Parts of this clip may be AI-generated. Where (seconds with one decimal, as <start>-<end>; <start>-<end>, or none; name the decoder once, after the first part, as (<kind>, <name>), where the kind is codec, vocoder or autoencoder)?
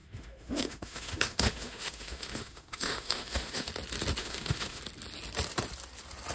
0.0-3.7 (autoencoder, DAC-VAE); 4.2-4.8